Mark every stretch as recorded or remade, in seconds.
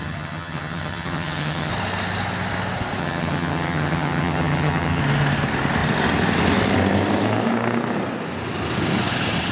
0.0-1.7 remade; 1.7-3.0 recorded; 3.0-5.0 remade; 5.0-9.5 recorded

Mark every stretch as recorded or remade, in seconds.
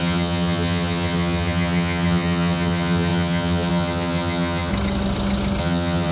0.0-4.7 remade; 4.7-5.6 recorded; 5.6-6.1 remade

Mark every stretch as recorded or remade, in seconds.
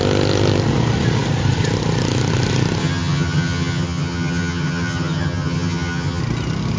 0.0-2.8 recorded; 2.8-6.2 remade; 6.2-6.8 recorded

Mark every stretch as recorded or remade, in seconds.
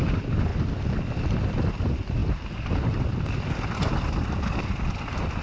0.0-5.4 recorded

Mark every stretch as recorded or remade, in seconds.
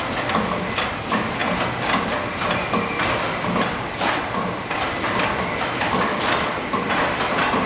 0.0-7.7 recorded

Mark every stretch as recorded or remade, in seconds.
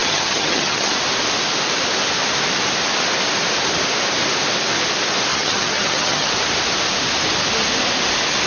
0.0-0.9 remade; 0.9-5.3 recorded; 5.3-6.3 remade; 6.3-8.5 recorded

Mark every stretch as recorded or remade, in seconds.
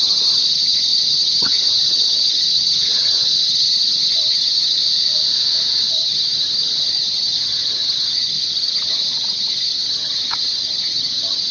0.0-4.8 remade; 4.8-5.9 recorded; 5.9-11.5 remade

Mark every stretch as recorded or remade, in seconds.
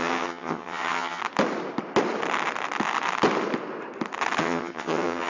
0.0-1.2 remade; 1.2-4.4 recorded; 4.4-5.3 remade